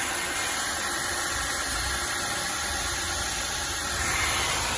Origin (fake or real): real